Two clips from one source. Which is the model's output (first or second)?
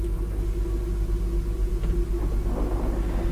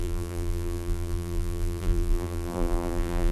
second